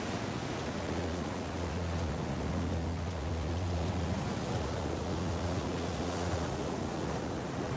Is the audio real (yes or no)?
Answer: no